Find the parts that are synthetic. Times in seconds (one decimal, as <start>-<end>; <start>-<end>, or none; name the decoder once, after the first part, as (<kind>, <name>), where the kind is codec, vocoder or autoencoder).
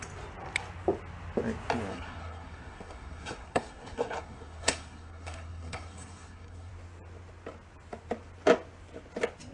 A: 1.9-6.7 (codec, SNAC)